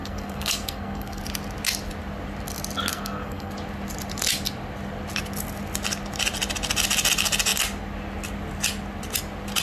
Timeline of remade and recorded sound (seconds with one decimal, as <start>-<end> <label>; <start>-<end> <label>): 0.0-1.2 remade; 1.2-2.9 recorded; 2.9-3.5 remade; 3.5-9.6 recorded